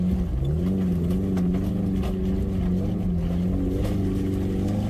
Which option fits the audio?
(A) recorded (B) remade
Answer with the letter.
A